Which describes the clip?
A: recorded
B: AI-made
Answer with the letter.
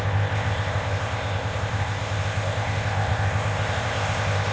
B